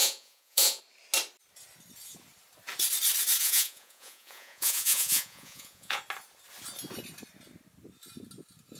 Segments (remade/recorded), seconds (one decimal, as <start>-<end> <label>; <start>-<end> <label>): 0.0-0.8 remade; 0.8-3.4 recorded; 3.4-6.0 remade; 6.0-8.8 recorded